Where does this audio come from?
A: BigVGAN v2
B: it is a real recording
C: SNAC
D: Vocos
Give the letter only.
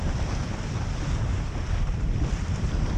B